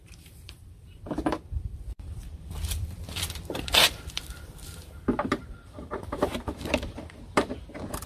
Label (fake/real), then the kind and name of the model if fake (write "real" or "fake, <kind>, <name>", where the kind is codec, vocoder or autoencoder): fake, vocoder, BigVGAN v2